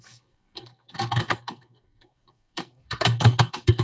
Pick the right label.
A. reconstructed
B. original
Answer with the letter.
A